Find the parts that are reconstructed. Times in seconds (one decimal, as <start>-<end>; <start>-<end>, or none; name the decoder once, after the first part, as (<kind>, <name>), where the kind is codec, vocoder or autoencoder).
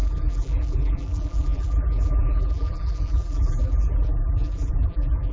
0.0-5.3 (vocoder, BigVGAN v2)